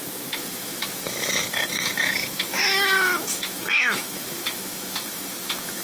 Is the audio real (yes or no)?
no